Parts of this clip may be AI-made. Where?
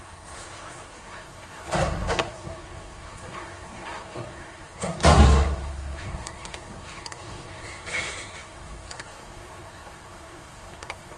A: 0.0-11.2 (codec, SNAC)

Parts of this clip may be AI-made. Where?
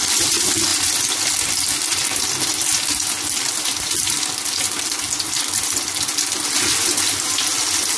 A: none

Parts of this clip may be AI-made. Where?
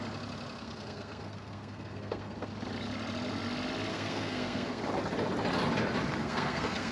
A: 0.6-2.5 (codec, SNAC); 3.9-4.8; 6.2-6.9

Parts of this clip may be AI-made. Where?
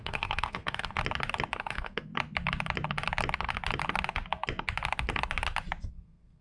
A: 0.0-1.0 (codec, SNAC); 1.6-2.1; 5.9-6.4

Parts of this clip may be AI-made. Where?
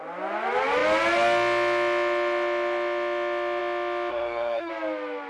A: 4.1-4.7 (codec, SNAC)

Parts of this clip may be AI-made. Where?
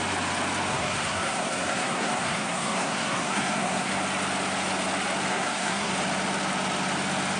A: 0.7-3.9 (codec, SNAC); 5.3-5.9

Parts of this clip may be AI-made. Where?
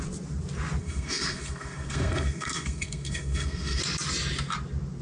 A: 0.8-3.8 (codec, SNAC)